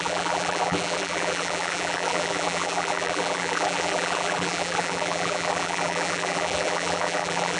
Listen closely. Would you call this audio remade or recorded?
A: remade